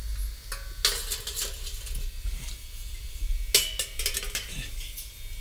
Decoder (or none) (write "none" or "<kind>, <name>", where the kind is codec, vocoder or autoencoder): none